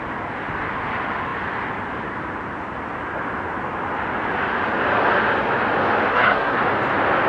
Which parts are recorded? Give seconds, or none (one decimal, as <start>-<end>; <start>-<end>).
0.0-6.1; 6.6-7.3

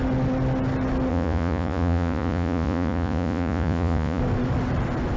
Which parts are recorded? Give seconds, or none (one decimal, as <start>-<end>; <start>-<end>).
0.0-1.1; 4.2-5.2

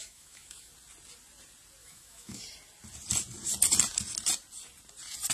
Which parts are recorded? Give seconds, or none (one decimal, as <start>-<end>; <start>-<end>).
0.7-1.8; 2.4-5.3

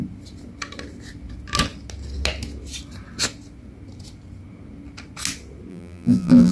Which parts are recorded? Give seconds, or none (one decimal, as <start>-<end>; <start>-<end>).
0.0-5.7

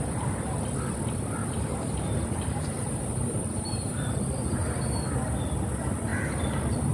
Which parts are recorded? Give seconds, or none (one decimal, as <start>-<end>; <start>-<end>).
0.0-1.4; 4.8-6.1

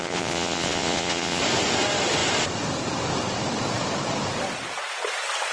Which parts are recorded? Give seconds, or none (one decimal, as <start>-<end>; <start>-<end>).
1.4-5.5

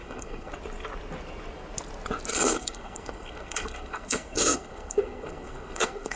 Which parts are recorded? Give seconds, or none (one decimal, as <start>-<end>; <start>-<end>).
0.5-2.3